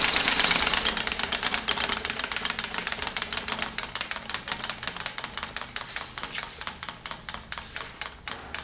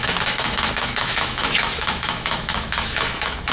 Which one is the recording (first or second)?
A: first